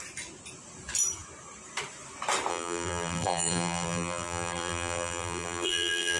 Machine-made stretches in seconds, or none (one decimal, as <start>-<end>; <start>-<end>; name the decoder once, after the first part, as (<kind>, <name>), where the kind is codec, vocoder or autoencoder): 2.5-6.2 (vocoder, BigVGAN v2)